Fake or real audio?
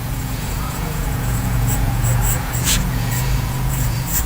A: fake